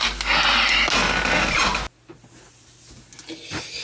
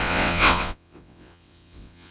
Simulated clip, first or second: second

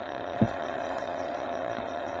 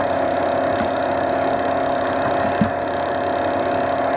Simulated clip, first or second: first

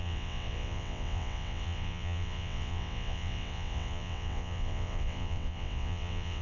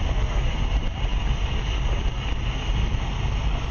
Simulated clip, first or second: first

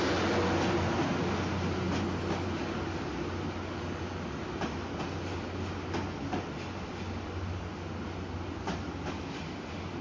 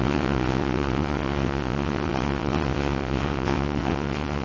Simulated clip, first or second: second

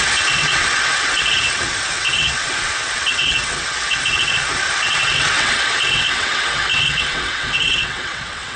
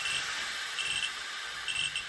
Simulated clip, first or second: first